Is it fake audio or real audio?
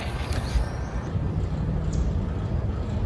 real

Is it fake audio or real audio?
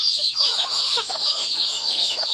fake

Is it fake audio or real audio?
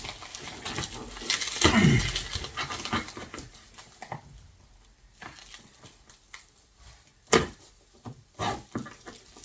real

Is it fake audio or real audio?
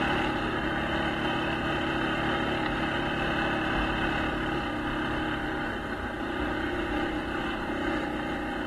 fake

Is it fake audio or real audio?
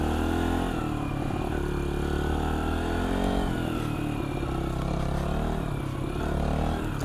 real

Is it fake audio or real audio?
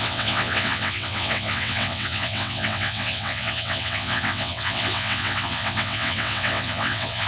fake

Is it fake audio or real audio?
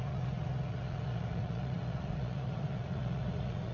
fake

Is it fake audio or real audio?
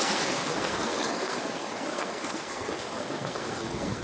fake